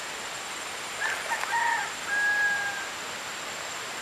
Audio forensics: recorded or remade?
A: recorded